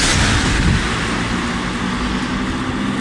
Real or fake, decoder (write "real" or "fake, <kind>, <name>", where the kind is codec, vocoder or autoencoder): real